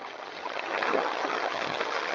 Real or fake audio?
fake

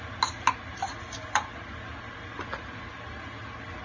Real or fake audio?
real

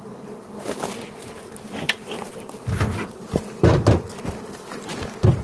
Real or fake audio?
real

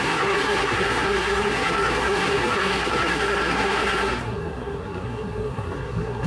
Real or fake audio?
fake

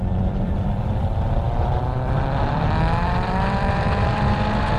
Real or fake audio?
fake